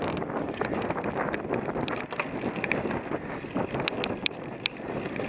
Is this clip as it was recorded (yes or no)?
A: yes